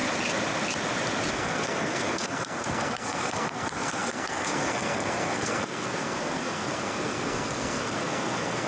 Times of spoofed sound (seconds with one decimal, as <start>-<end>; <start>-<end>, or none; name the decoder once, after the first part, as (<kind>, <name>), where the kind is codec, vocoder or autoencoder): 1.3-8.7 (codec, SNAC)